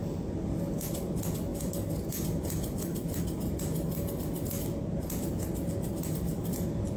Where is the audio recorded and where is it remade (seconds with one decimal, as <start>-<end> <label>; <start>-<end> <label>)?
0.0-7.0 recorded